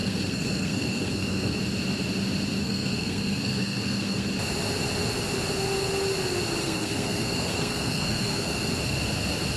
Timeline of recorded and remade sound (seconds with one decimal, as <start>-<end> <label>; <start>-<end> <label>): 0.0-1.6 remade; 1.6-2.6 recorded; 2.6-4.3 remade; 4.3-6.6 recorded; 6.6-8.7 remade; 8.7-9.6 recorded